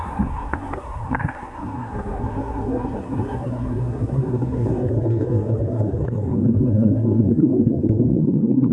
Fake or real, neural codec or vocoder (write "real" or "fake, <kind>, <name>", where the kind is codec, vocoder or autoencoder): fake, codec, SNAC